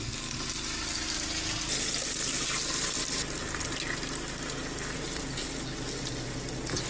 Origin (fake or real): real